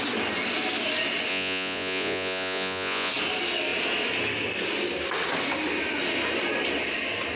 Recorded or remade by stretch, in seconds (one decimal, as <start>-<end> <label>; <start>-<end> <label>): 0.0-1.3 recorded; 1.3-3.1 remade; 3.1-7.4 recorded

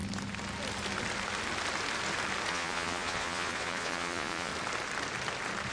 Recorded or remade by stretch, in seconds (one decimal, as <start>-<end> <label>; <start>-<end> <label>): 0.0-2.5 recorded; 2.5-4.5 remade; 4.5-5.7 recorded

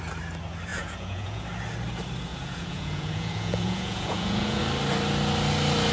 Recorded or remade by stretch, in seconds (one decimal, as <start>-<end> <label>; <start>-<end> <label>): 0.0-0.7 recorded; 0.7-1.4 remade; 1.4-2.3 recorded; 2.3-4.6 remade; 4.6-5.9 recorded

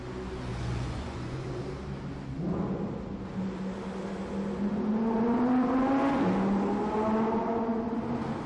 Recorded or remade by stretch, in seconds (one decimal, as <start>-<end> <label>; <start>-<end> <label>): 0.0-0.5 recorded; 0.5-1.6 remade; 1.6-8.5 recorded